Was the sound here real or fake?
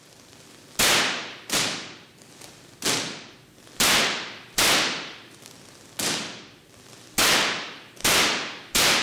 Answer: fake